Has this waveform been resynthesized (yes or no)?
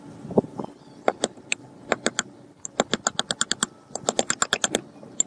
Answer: no